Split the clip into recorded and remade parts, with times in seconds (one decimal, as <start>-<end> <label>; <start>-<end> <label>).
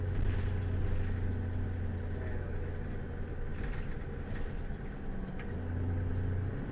0.0-6.7 recorded